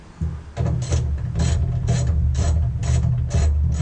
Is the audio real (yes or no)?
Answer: yes